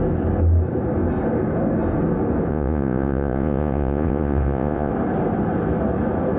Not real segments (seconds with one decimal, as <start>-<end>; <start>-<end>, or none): 2.5-4.9